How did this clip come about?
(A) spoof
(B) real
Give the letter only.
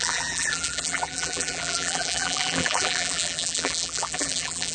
A